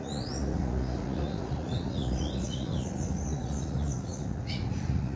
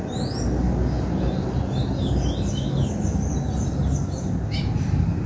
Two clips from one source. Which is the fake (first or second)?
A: first